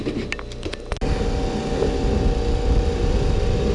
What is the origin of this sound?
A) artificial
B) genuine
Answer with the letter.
B